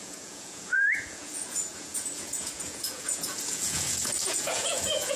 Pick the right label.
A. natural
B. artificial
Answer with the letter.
B